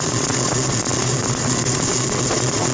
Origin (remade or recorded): remade